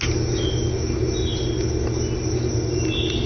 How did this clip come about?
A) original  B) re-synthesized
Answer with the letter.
A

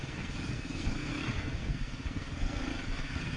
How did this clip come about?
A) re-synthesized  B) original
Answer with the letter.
A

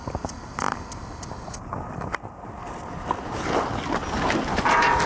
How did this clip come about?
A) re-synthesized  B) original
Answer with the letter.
B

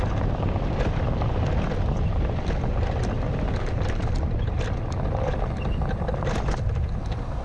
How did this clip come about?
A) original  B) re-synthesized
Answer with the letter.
A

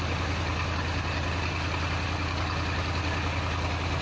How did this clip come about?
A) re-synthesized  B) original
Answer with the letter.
B